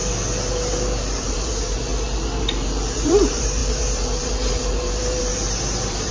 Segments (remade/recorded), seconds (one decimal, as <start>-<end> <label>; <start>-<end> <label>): 0.0-1.9 remade; 1.9-2.4 recorded; 2.4-6.1 remade